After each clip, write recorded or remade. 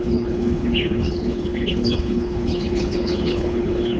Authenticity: remade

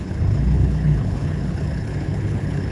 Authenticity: remade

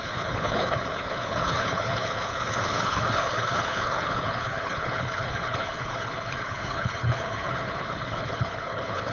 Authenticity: remade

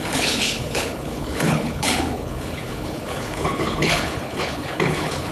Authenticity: remade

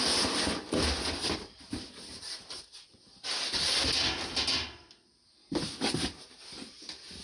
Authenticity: recorded